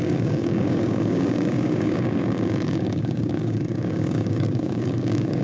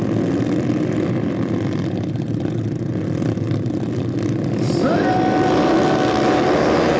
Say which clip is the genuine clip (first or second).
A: second